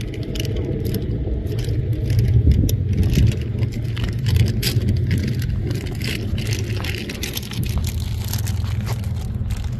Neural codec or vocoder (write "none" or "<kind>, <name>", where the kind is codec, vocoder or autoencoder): none